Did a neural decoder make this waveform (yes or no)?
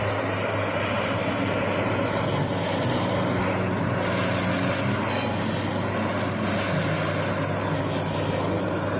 no